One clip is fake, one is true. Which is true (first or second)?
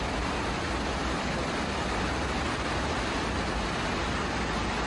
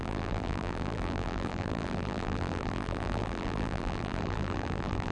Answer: first